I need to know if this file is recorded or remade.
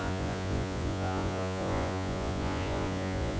remade